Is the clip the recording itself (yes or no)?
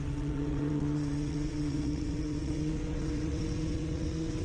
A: no